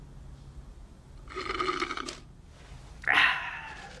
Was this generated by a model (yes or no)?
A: no